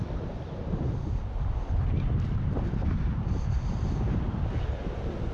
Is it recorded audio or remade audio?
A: recorded